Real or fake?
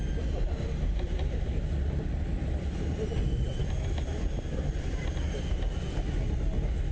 real